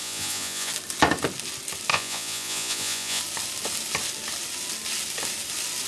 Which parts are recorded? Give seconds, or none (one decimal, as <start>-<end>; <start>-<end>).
0.7-1.9; 3.2-5.9